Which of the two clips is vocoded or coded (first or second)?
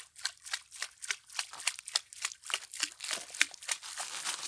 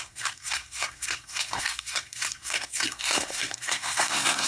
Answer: second